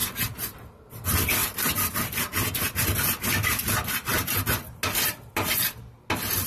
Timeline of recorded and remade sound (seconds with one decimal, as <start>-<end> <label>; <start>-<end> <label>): 0.0-6.5 recorded